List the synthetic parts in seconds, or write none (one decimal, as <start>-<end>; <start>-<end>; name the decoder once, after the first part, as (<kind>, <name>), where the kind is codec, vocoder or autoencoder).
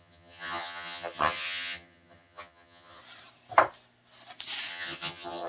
0.0-3.0 (vocoder, HiFi-GAN); 4.7-5.5